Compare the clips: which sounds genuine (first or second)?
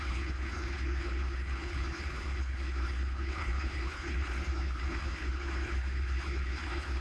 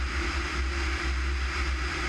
second